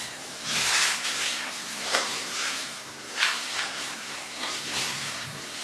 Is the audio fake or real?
fake